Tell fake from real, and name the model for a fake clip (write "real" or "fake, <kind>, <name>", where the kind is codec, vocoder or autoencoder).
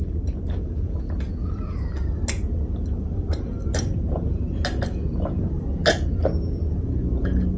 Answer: real